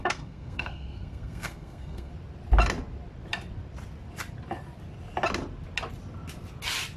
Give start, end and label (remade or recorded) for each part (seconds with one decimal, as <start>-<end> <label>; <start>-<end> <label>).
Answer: 0.0-2.1 remade; 2.1-7.0 recorded